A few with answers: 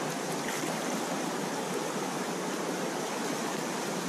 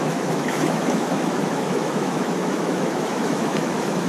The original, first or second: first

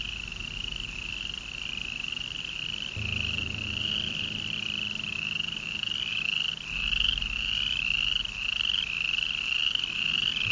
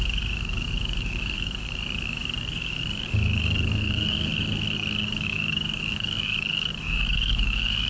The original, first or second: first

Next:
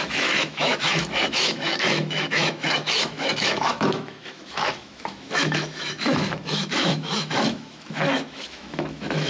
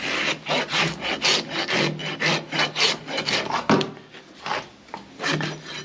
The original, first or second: second